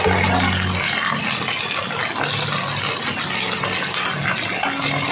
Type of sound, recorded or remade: recorded